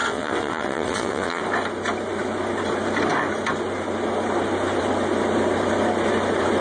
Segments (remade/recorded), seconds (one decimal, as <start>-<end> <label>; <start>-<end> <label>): 0.0-1.4 remade; 1.4-6.6 recorded